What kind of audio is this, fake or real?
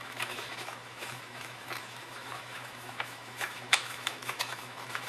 fake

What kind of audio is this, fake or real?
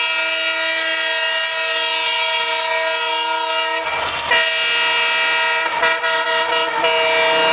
real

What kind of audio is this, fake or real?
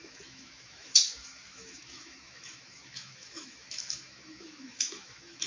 fake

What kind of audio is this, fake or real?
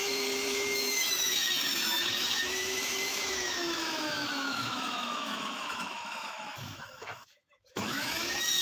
fake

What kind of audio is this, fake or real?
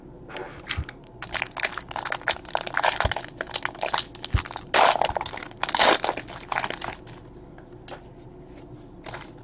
real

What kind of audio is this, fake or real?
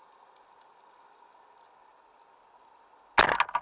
real